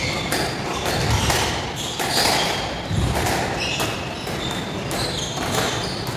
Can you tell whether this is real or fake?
fake